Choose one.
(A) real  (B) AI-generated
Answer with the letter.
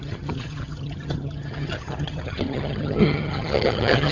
B